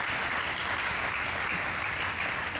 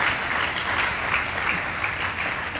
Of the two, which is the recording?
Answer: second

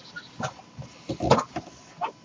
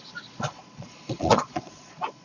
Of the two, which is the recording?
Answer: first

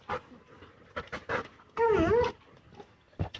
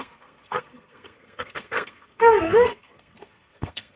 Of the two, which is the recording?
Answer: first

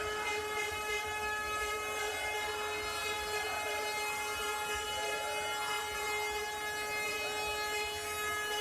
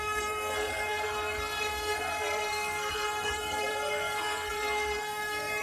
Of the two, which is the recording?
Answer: first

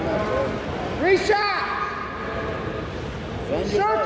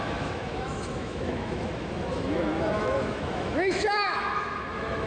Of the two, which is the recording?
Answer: first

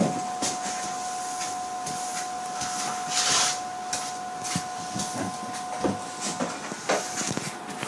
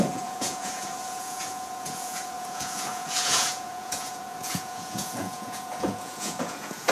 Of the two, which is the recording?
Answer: first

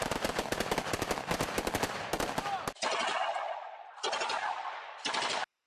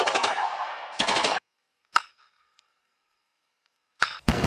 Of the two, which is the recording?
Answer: first